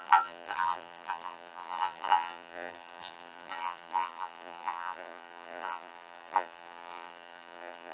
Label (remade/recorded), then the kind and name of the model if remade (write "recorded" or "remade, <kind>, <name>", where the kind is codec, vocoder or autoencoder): remade, vocoder, BigVGAN v2